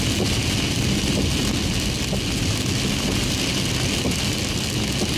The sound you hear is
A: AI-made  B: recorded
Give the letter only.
B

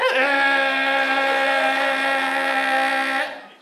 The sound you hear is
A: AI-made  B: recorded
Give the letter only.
B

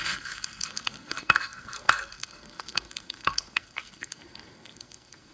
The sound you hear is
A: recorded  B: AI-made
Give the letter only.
B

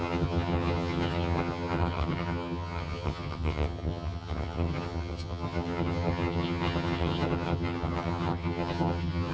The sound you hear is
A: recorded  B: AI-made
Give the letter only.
B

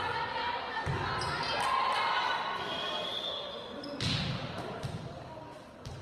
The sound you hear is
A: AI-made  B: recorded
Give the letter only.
B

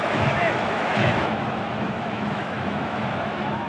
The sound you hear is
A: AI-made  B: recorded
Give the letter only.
A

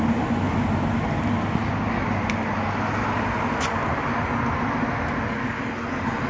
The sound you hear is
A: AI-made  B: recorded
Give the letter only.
B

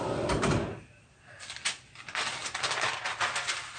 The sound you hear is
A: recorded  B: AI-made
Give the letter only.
A